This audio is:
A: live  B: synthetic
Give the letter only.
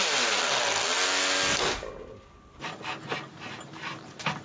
A